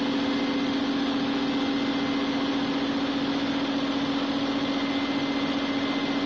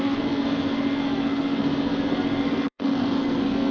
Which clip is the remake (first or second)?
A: second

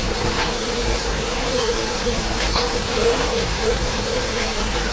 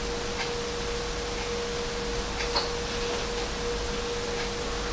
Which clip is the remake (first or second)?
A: first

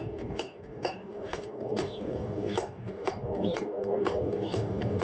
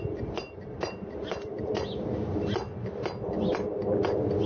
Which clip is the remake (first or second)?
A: first